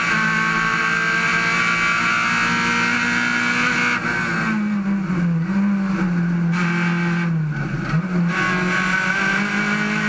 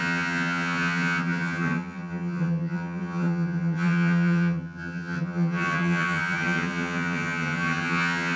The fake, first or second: second